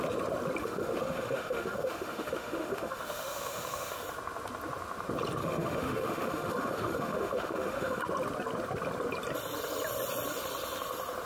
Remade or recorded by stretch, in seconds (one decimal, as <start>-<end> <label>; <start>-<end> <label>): 0.0-0.6 recorded; 0.6-4.0 remade; 4.0-5.4 recorded; 5.4-8.0 remade; 8.0-11.3 recorded

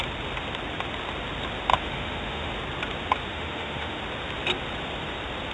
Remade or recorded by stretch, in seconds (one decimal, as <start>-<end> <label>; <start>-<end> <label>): 0.0-1.7 recorded; 1.7-2.5 remade; 2.5-3.3 recorded; 3.3-4.0 remade; 4.0-5.5 recorded